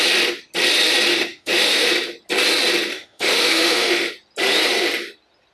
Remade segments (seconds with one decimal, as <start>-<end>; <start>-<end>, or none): 1.1-1.9; 2.9-4.1